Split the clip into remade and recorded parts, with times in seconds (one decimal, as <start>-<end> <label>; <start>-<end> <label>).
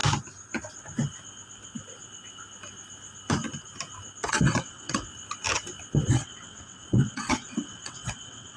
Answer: 0.0-4.3 recorded; 4.3-5.1 remade; 5.1-6.1 recorded; 6.1-8.6 remade